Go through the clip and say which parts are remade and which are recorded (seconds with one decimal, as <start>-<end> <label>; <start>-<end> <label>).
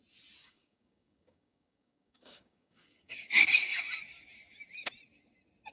0.0-0.4 recorded; 0.4-3.8 remade; 3.8-5.7 recorded